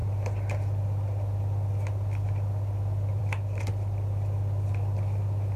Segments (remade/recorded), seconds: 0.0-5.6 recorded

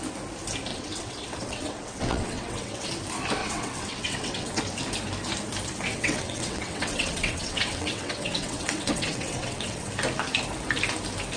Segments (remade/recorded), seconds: 0.0-0.7 recorded; 0.7-2.9 remade; 2.9-3.4 recorded; 3.4-4.6 remade; 4.6-5.9 recorded; 5.9-9.9 remade; 9.9-11.4 recorded

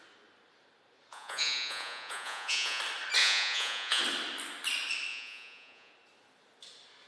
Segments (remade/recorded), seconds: 0.0-1.1 recorded; 1.1-2.8 remade; 2.8-3.2 recorded; 3.2-4.0 remade; 4.0-5.1 recorded; 5.1-5.9 remade; 5.9-7.1 recorded

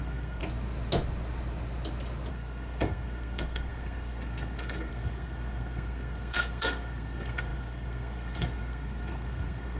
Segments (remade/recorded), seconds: 0.0-0.4 remade; 0.4-2.3 recorded; 2.3-9.8 remade

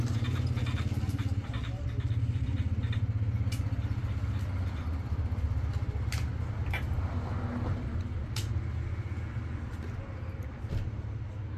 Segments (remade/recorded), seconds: 0.0-11.6 recorded